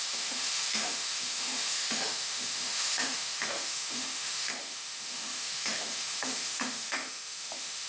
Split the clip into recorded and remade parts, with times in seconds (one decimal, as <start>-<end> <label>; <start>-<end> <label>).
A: 0.0-7.9 remade